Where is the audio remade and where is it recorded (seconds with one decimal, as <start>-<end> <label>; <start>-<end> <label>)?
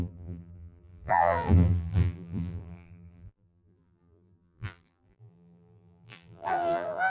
0.0-7.1 remade